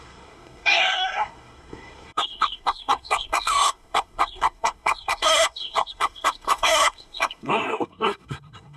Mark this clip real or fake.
fake